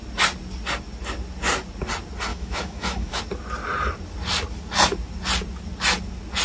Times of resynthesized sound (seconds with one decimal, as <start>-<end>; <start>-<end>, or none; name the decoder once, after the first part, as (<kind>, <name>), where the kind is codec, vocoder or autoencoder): 2.3-3.2 (autoencoder, DAC-VAE)